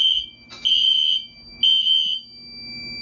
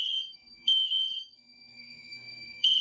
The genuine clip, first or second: first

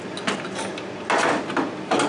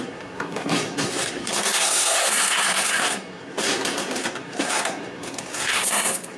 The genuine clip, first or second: first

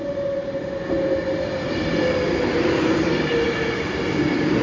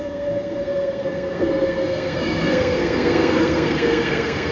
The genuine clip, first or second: first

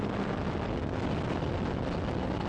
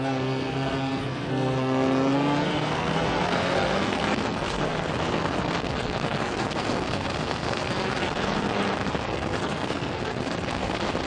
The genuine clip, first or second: first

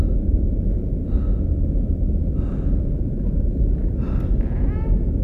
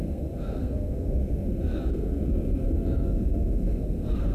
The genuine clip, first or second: first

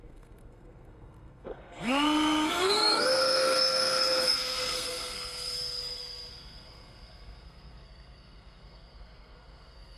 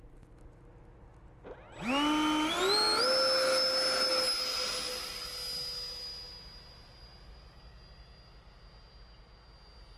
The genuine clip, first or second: second